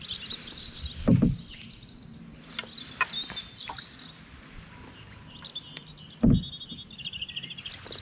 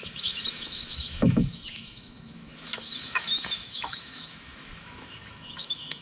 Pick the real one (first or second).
first